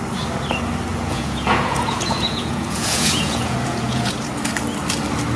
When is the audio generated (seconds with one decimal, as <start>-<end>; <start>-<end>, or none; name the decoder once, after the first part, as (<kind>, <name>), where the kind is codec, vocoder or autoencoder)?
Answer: 0.9-4.1 (vocoder, Vocos)